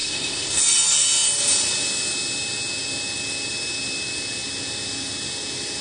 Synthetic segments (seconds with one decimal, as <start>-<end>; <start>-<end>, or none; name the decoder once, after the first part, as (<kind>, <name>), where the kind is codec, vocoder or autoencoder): 0.0-0.6 (codec, SNAC)